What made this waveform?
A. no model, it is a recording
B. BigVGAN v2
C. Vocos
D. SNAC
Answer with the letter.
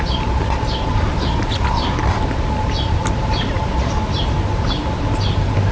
A